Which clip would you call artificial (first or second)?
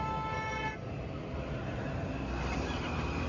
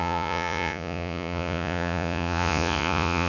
second